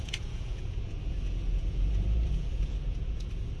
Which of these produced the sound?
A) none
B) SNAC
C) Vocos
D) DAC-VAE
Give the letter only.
C